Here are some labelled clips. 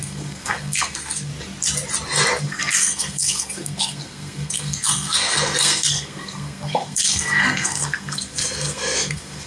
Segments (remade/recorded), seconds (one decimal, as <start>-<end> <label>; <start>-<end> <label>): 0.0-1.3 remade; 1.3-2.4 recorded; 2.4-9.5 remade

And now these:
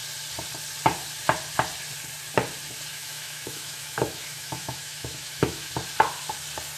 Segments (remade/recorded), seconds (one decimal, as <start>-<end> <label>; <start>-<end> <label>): 0.0-2.9 recorded; 2.9-5.7 remade; 5.7-6.8 recorded

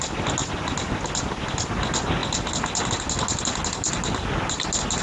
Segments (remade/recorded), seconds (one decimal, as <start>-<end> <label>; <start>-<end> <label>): 0.0-5.0 recorded